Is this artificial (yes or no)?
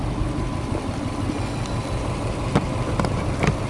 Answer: yes